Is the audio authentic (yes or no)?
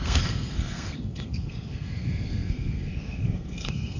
no